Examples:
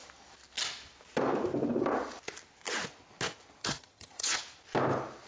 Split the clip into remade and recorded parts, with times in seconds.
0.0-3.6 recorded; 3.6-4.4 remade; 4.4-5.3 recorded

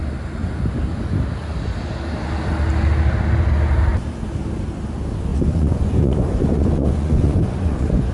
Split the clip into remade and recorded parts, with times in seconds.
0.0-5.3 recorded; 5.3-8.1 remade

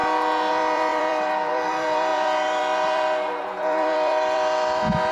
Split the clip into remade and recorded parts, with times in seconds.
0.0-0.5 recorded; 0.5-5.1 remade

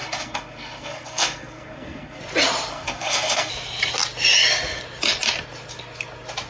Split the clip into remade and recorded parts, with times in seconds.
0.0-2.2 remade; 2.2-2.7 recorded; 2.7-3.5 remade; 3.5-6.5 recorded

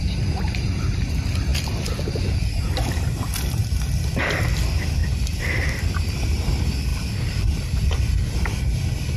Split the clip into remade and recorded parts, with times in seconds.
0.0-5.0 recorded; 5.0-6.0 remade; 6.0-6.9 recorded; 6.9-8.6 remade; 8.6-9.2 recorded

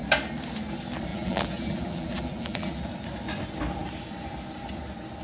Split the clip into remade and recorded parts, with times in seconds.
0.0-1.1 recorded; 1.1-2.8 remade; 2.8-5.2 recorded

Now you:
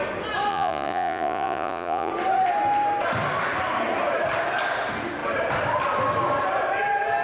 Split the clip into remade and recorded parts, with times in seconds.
0.0-0.5 recorded; 0.5-2.1 remade; 2.1-7.2 recorded